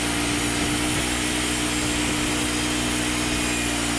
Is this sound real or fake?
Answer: real